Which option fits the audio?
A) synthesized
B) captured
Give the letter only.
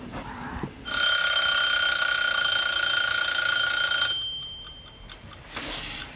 B